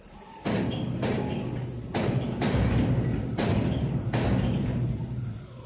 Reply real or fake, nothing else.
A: real